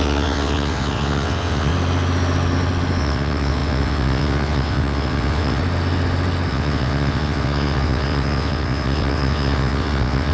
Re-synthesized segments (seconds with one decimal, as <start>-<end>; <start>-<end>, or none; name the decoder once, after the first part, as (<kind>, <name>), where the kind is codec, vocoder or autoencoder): 0.0-1.7 (vocoder, WaveNeXt); 3.0-5.6; 6.5-10.3